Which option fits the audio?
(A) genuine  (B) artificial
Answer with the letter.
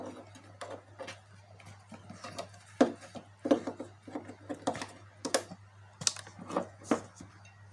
A